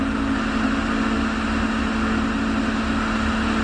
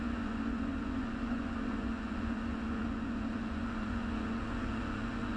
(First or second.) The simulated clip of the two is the second